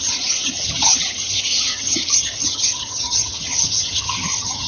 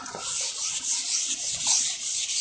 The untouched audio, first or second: second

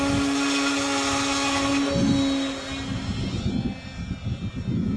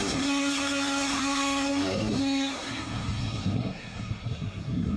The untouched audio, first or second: first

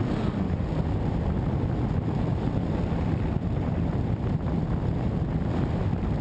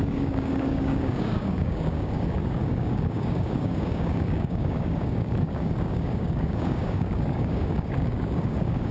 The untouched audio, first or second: first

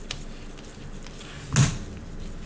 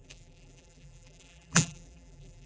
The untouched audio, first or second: first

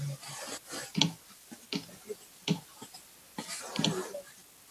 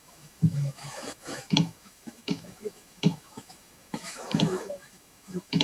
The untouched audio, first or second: first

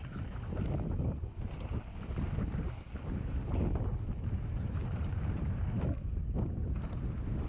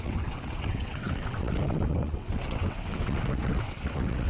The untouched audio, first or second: first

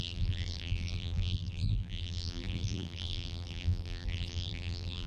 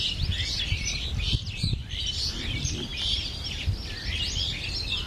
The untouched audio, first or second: second